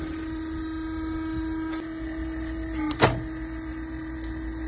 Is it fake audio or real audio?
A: real